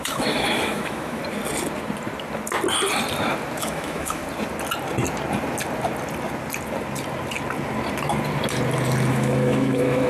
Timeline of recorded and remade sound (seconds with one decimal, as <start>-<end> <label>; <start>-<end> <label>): 0.0-1.2 remade; 1.2-3.6 recorded; 3.6-4.2 remade; 4.2-9.1 recorded; 9.1-10.1 remade